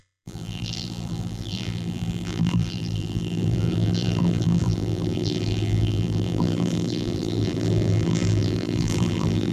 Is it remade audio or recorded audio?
remade